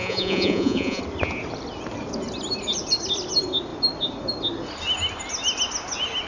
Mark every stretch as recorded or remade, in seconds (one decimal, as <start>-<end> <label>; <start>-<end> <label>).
0.0-1.0 remade; 1.0-6.3 recorded